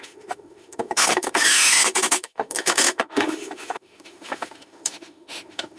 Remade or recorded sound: remade